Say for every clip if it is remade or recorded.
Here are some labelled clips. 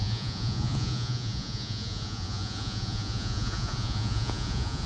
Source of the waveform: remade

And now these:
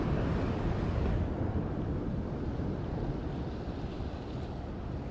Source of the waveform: recorded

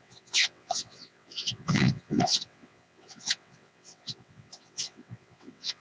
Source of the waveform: remade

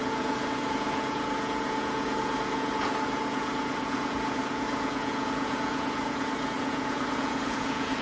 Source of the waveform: remade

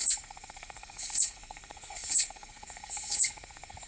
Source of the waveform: remade